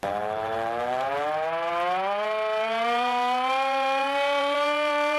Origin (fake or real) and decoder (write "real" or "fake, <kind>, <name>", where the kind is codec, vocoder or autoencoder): fake, vocoder, BigVGAN v2